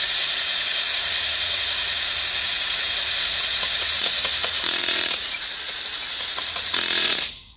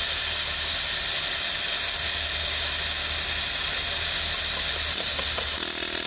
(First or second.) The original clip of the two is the second